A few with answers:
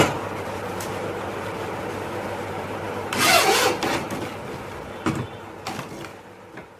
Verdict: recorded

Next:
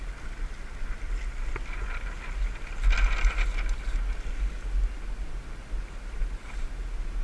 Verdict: recorded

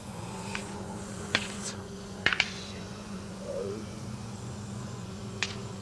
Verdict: remade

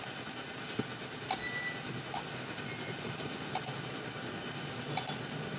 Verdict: recorded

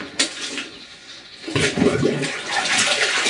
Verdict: remade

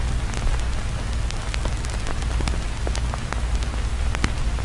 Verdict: recorded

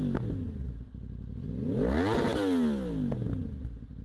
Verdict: recorded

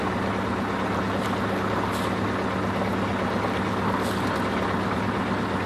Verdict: recorded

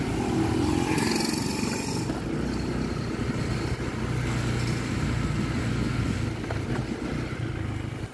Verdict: recorded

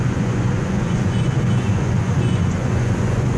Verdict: remade